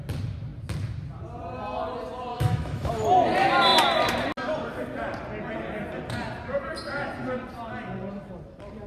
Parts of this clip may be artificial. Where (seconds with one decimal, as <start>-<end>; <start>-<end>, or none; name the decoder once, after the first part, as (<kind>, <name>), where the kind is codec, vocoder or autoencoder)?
2.3-2.9 (autoencoder, DAC-VAE)